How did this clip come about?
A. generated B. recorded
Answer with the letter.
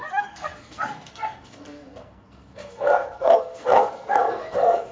A